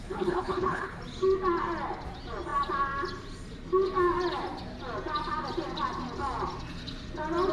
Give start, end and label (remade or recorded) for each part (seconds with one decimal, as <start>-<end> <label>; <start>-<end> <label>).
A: 0.0-1.0 remade; 1.0-7.5 recorded